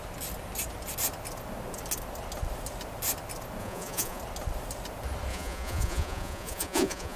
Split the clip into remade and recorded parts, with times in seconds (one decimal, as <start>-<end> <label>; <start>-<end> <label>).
0.0-3.6 recorded; 3.6-4.2 remade; 4.2-5.3 recorded; 5.3-7.2 remade